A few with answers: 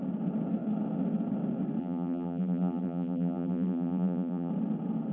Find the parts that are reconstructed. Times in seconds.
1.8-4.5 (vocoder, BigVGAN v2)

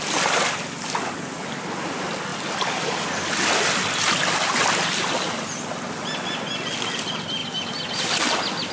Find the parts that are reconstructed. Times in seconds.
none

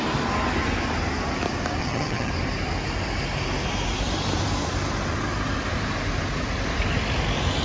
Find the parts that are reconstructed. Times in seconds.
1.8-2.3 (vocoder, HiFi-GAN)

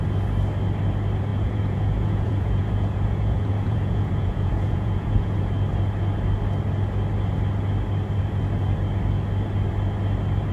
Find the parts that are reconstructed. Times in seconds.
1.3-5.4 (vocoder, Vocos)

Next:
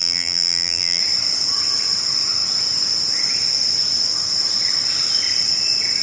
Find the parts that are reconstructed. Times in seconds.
0.0-1.0 (vocoder, BigVGAN v2)

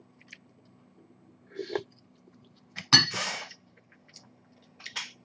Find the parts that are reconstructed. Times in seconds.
1.6-2.6 (vocoder, BigVGAN v2); 3.0-3.9